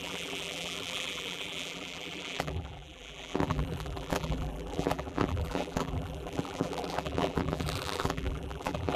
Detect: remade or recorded remade